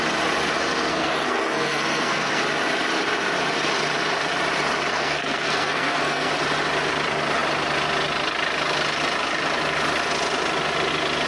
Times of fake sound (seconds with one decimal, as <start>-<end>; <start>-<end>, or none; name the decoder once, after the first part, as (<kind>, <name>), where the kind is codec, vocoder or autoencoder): 0.9-2.4 (codec, SNAC); 4.9-6.3